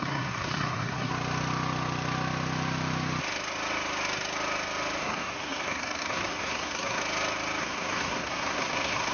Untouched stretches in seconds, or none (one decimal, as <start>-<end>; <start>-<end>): 1.1-5.0; 7.0-7.6